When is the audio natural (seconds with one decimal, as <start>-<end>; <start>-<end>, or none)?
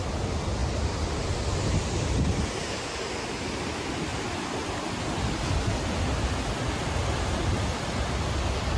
0.0-0.6; 2.0-8.8